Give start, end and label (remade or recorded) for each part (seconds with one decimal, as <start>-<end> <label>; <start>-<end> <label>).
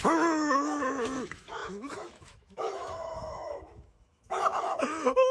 0.0-5.3 remade